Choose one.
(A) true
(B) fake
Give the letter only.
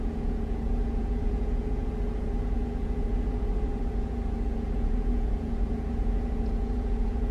B